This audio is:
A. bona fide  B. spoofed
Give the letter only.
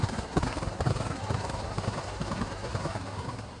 B